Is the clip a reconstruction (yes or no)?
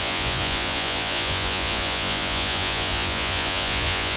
yes